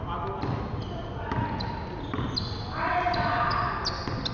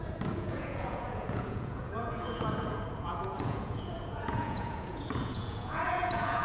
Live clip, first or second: first